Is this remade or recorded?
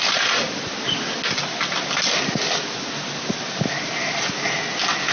recorded